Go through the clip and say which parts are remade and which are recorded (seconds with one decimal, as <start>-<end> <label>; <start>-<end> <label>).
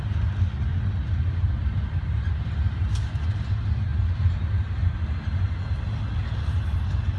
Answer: 0.0-7.2 recorded